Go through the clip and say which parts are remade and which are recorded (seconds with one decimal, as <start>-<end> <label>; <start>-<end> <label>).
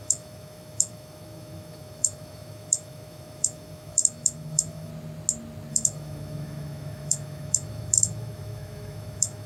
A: 0.0-4.9 remade; 4.9-5.7 recorded; 5.7-9.5 remade